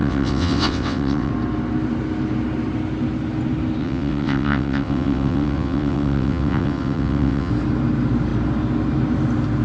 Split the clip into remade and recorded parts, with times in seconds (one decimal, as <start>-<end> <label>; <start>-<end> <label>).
0.0-1.3 remade; 1.3-3.8 recorded; 3.8-7.5 remade; 7.5-9.6 recorded